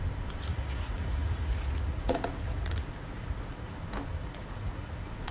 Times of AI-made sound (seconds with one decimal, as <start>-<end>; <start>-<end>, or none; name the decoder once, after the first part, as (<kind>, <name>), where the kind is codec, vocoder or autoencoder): 0.5-3.7 (vocoder, Vocos); 4.2-5.3